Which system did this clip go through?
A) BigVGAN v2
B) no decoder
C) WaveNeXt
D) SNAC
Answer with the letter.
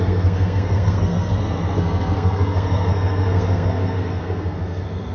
D